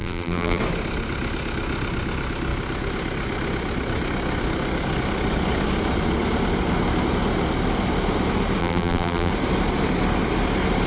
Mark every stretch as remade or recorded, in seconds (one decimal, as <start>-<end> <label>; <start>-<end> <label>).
0.0-0.6 remade; 0.6-8.6 recorded; 8.6-9.3 remade; 9.3-10.9 recorded